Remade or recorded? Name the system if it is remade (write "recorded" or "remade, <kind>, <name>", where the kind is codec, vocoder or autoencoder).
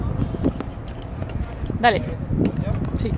recorded